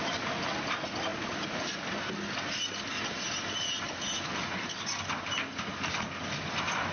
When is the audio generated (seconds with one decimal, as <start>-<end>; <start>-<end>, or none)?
none